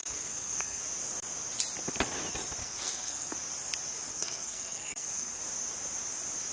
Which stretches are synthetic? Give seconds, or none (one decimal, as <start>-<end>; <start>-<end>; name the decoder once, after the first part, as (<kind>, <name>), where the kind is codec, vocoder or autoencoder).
0.0-0.8 (codec, SNAC); 2.6-3.3; 4.1-5.4